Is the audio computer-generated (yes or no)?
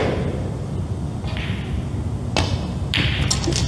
no